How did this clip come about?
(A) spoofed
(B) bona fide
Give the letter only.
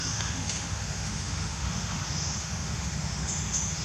A